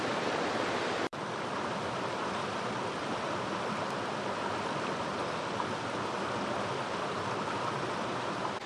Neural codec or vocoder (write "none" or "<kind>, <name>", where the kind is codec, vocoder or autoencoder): vocoder, BigVGAN v2